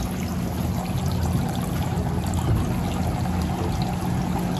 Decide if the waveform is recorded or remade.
recorded